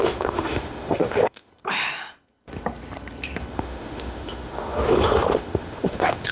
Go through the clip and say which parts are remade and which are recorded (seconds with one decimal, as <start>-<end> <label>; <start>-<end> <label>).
0.0-1.5 remade; 1.5-3.5 recorded; 3.5-6.3 remade